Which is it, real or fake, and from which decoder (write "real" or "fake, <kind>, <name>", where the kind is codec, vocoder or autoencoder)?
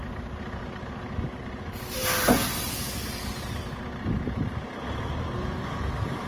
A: real